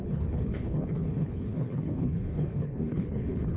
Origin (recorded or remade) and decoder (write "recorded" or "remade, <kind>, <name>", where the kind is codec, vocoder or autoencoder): remade, codec, HILCodec